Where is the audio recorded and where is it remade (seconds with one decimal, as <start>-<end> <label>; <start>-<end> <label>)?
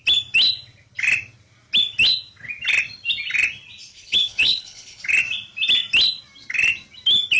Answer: 0.0-3.9 recorded; 3.9-5.0 remade; 5.0-7.4 recorded